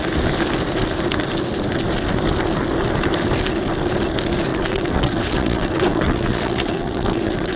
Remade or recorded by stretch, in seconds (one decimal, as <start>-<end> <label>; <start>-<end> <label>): 0.0-4.5 recorded; 4.5-7.6 remade